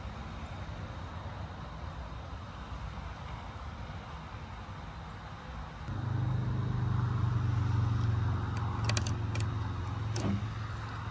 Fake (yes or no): no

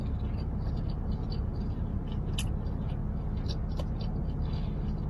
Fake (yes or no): no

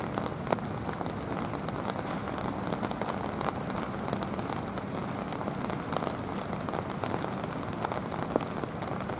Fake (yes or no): no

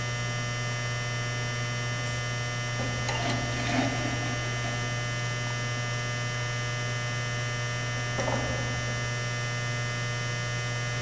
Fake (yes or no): no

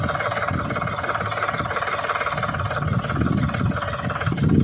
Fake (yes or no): no